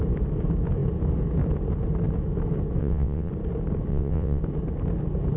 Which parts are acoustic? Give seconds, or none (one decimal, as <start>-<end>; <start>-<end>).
0.0-2.8; 3.3-3.9; 4.4-5.4